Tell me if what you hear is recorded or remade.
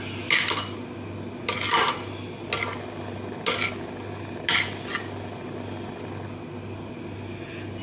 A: recorded